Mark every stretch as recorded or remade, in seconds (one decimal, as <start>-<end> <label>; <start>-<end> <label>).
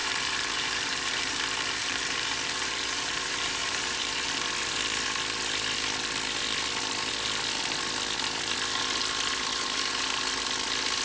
0.0-1.4 remade; 1.4-1.8 recorded; 1.8-4.3 remade; 4.3-11.0 recorded